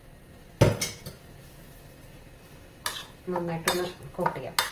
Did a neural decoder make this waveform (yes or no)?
no